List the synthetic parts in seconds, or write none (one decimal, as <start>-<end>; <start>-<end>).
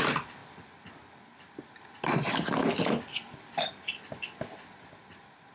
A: none